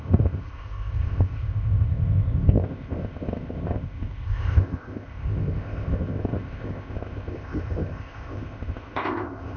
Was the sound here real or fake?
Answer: fake